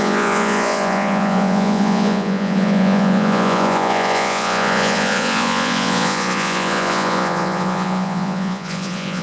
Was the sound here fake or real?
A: fake